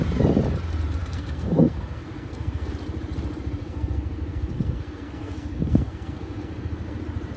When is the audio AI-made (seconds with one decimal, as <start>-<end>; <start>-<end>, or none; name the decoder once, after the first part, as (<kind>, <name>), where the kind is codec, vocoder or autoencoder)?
1.0-2.7 (codec, SNAC); 3.6-7.0